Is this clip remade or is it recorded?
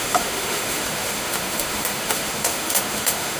remade